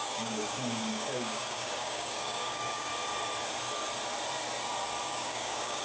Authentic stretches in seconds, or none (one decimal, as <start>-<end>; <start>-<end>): 2.9-5.0